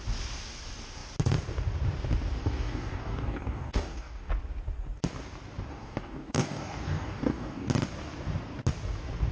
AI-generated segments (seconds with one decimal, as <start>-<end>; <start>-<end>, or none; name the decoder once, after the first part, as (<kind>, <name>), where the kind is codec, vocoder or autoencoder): 2.4-4.3 (codec, DAC); 5.7-7.7